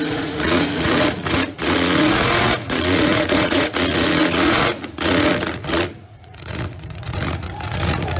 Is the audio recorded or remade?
remade